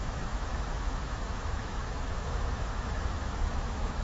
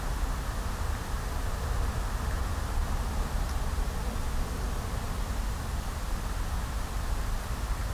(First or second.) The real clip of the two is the second